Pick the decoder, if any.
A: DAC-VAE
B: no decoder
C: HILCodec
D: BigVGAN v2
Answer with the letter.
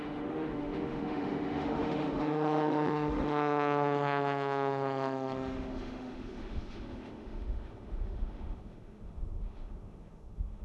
A